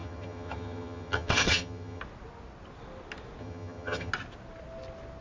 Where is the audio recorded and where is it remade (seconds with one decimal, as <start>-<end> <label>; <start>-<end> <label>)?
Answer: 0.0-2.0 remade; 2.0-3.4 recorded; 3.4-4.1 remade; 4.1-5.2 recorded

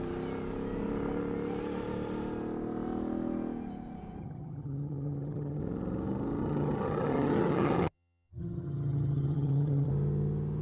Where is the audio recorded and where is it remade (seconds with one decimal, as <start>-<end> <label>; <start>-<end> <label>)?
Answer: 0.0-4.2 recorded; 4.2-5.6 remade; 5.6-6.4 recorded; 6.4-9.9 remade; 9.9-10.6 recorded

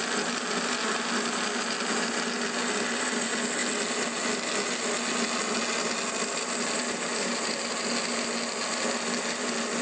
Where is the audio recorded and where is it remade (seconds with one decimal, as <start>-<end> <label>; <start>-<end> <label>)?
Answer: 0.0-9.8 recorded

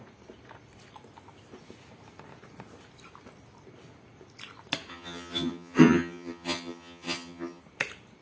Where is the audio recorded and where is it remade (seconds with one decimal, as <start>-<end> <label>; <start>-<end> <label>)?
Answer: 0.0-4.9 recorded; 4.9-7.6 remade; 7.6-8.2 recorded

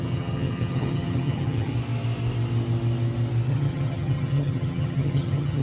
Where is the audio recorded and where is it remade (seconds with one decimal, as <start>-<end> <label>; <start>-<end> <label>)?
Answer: 0.0-1.7 remade; 1.7-3.5 recorded; 3.5-5.6 remade

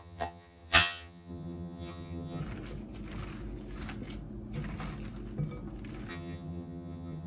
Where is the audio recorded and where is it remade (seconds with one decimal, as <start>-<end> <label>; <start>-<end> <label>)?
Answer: 0.0-2.4 remade; 2.4-6.1 recorded; 6.1-7.3 remade

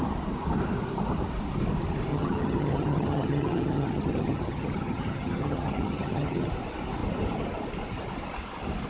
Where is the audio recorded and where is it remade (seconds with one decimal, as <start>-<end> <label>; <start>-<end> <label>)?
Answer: 0.0-2.1 recorded; 2.1-6.5 remade; 6.5-8.9 recorded

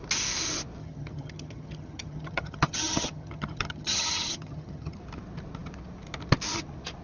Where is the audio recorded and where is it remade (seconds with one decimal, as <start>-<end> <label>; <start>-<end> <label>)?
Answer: 0.0-0.8 recorded; 0.8-5.0 remade; 5.0-7.0 recorded